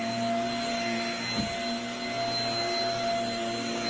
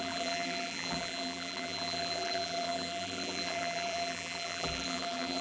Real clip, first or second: first